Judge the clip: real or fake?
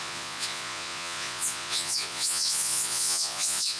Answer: fake